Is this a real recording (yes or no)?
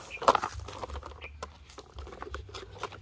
yes